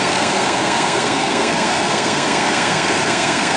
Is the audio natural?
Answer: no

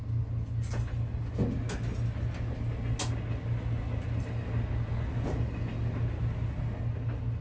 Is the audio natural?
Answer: yes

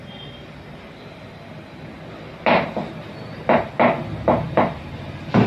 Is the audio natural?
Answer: yes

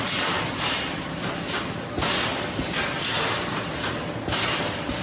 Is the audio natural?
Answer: yes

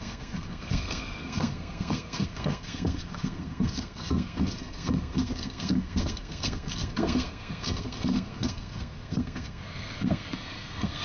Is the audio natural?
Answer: no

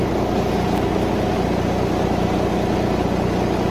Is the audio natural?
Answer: yes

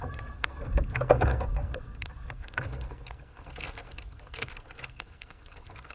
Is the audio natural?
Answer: no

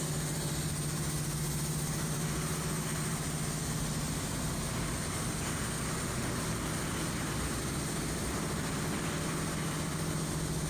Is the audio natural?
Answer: yes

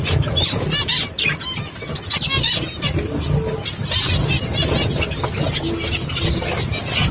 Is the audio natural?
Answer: yes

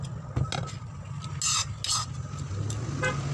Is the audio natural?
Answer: yes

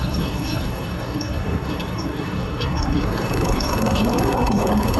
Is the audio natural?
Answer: no